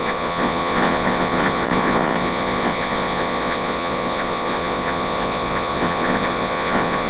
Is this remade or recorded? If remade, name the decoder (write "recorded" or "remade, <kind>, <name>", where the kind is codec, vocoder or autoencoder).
remade, vocoder, Vocos